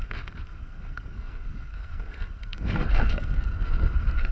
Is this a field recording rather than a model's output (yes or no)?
no